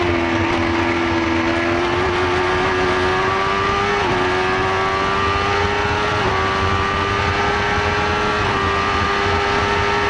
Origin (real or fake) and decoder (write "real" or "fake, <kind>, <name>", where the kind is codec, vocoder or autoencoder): real